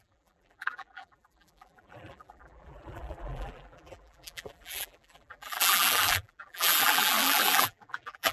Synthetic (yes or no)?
yes